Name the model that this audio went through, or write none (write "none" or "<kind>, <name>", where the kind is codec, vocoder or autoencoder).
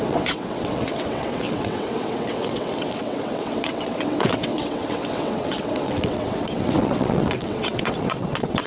vocoder, WaveNeXt